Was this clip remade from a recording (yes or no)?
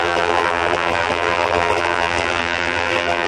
yes